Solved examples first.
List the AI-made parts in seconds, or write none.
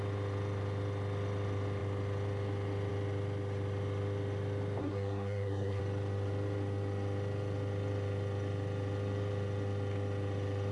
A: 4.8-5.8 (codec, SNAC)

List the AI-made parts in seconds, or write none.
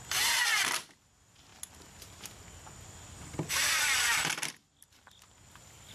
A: none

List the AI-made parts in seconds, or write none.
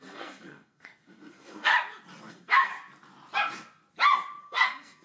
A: 0.0-1.7 (codec, SNAC); 2.3-2.7; 4.4-5.0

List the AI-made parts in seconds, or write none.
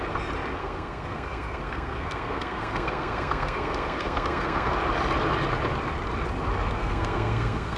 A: 0.6-4.7 (codec, SNAC); 6.8-7.8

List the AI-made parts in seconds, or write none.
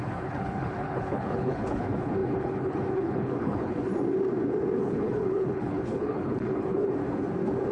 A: 0.0-3.9 (codec, HILCodec); 4.8-6.9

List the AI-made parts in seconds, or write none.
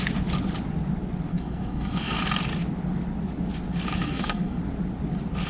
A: 1.3-2.2 (codec, SNAC); 4.0-4.6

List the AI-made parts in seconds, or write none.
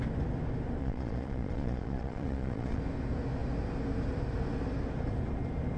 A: 0.8-2.8 (vocoder, Vocos)